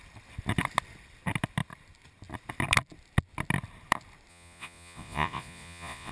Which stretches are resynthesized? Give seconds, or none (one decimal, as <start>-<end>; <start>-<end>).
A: 4.3-6.1